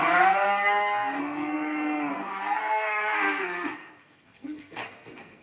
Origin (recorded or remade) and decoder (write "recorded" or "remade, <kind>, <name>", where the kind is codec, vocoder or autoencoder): remade, codec, SNAC